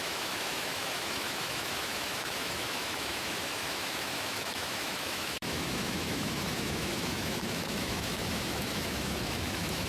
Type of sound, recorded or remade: remade